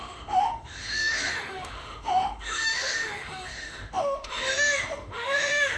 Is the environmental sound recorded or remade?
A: remade